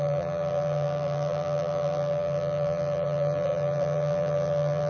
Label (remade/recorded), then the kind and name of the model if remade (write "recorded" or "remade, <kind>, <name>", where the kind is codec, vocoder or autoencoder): remade, vocoder, BigVGAN v2